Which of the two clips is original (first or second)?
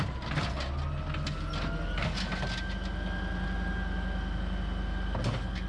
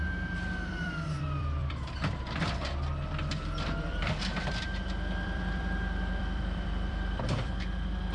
first